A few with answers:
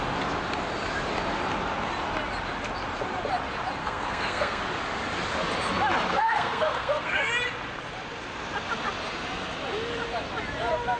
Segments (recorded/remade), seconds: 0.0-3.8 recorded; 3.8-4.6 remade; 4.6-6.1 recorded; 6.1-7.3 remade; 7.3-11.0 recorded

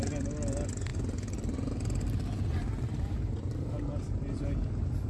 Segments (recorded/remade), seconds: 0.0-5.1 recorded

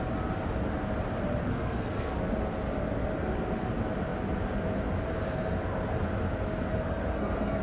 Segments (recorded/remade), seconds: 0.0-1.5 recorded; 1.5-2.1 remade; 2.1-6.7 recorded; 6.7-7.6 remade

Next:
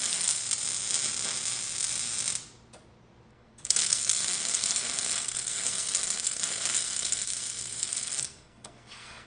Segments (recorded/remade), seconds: 0.0-0.4 remade; 0.4-3.3 recorded; 3.3-9.3 remade

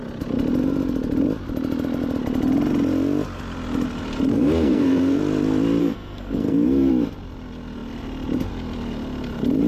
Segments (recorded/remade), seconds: 0.0-4.3 recorded; 4.3-5.2 remade; 5.2-5.8 recorded; 5.8-6.9 remade; 6.9-9.7 recorded